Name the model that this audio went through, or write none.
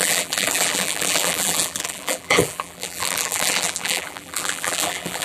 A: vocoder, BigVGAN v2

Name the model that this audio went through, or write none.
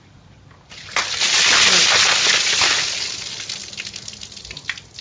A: none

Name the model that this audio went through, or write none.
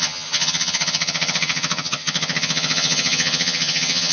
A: vocoder, HiFi-GAN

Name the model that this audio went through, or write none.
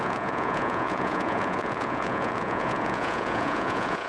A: vocoder, Vocos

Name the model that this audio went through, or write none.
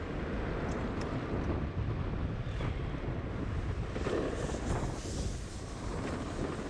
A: none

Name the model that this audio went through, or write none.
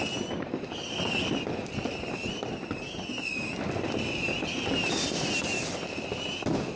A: none